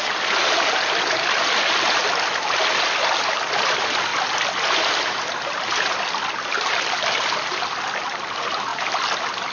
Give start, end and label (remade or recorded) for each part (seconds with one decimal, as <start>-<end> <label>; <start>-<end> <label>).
0.0-9.5 recorded